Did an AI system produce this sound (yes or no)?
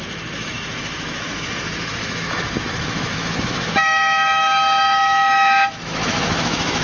yes